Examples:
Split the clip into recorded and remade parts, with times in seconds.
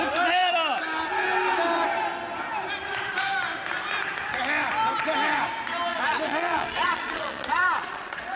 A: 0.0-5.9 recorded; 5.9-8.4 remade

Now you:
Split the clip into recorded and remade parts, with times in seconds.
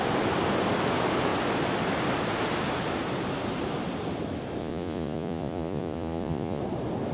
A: 0.0-4.6 recorded; 4.6-6.6 remade; 6.6-7.1 recorded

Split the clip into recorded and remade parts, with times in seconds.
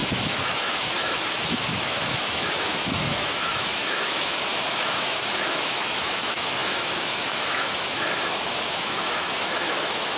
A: 0.0-10.2 remade